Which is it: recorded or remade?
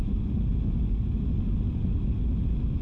recorded